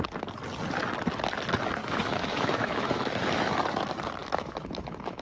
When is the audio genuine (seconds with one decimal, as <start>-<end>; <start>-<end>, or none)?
0.0-1.8; 3.6-4.2